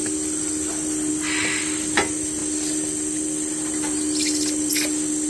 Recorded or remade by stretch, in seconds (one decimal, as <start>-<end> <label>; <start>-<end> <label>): 0.0-5.3 recorded